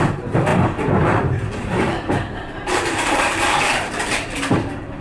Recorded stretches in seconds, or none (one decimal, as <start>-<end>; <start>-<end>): none